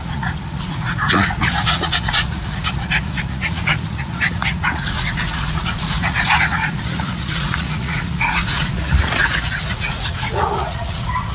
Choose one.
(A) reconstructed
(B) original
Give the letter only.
A